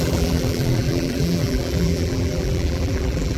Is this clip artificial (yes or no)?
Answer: yes